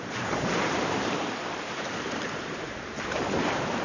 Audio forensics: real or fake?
fake